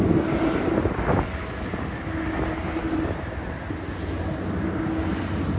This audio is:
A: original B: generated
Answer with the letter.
A